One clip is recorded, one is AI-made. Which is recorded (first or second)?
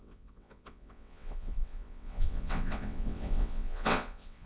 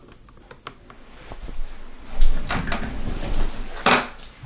second